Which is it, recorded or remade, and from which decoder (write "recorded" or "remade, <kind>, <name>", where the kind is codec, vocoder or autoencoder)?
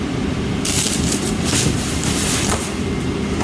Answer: recorded